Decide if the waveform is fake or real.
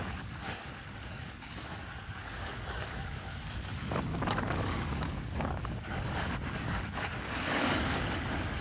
fake